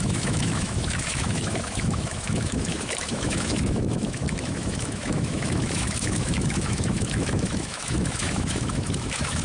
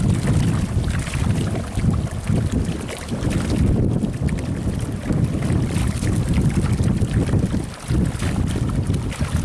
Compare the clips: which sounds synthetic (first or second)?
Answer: first